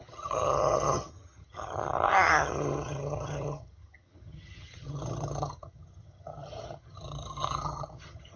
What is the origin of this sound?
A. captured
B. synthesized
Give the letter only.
B